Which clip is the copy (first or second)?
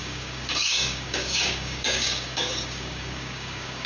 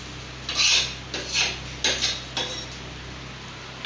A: first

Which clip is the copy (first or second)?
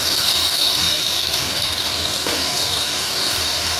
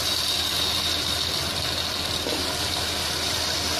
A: first